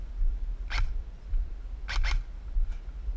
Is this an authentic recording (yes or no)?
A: yes